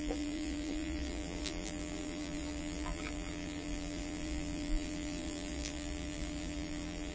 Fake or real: fake